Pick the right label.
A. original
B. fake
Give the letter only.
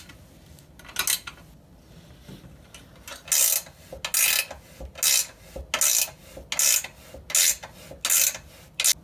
A